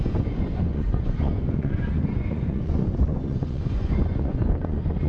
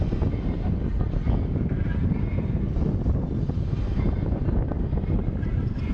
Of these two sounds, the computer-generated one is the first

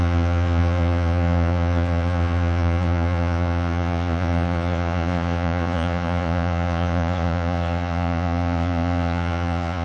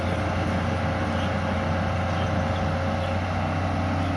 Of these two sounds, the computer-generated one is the first